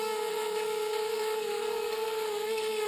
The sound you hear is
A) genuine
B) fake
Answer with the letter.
B